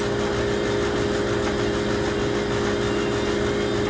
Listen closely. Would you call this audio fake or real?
real